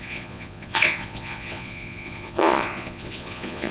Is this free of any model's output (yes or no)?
no